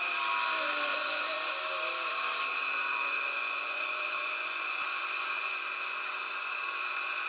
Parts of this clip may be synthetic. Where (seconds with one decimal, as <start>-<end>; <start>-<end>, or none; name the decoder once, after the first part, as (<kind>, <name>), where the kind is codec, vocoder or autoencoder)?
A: 0.9-1.5 (vocoder, Vocos); 2.9-7.3